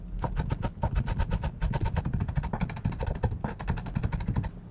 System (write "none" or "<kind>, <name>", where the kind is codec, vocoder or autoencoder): none